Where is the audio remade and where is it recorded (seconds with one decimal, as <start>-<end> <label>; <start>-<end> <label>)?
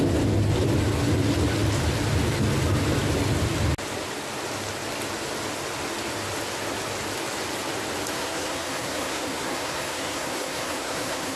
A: 0.0-8.1 recorded; 8.1-11.4 remade